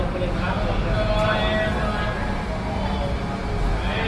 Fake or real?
real